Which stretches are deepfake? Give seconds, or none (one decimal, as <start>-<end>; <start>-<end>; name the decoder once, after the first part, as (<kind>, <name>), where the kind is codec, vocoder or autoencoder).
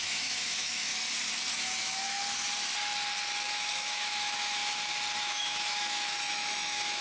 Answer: 0.0-0.9 (autoencoder, DAC-VAE); 1.5-2.2; 3.5-4.6; 5.2-7.0